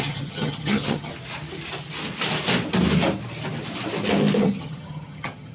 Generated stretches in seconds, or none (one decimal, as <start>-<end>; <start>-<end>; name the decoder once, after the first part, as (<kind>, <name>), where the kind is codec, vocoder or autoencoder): 0.0-1.1 (vocoder, HiFi-GAN); 4.4-5.5